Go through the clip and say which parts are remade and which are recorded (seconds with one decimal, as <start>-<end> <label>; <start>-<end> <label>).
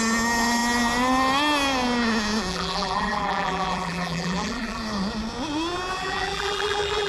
0.0-2.5 recorded; 2.5-4.8 remade; 4.8-6.0 recorded; 6.0-7.1 remade